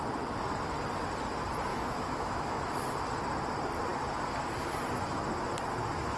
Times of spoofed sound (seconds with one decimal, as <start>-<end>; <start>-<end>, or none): 1.7-2.6

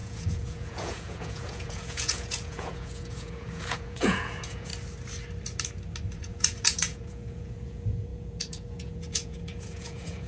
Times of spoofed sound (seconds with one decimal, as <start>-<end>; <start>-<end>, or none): 0.0-4.7; 6.2-10.3

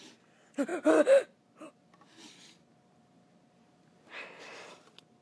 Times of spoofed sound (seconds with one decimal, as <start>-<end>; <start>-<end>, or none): 0.7-1.7